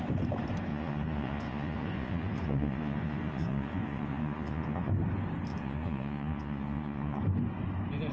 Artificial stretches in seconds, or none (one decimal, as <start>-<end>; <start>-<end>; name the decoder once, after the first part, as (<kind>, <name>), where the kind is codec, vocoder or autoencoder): 0.7-4.9 (vocoder, Vocos); 5.5-7.2